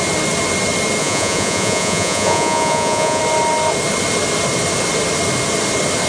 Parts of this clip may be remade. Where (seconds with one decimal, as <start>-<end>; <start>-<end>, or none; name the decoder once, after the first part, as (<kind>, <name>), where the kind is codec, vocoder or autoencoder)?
1.0-3.2 (vocoder, Vocos)